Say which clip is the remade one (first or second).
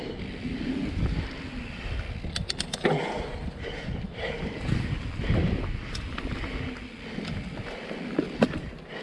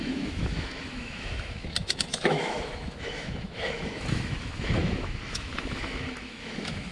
second